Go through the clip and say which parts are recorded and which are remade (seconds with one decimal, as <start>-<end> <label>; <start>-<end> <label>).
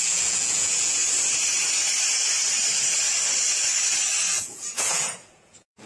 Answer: 0.0-1.0 remade; 1.0-4.3 recorded; 4.3-5.9 remade